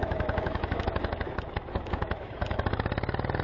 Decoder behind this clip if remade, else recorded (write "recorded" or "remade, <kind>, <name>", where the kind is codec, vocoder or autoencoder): remade, autoencoder, DAC-VAE